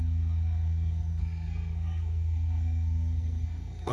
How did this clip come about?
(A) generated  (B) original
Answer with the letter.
A